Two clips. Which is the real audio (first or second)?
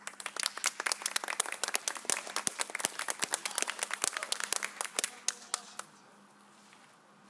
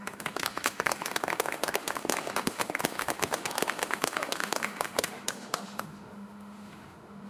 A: first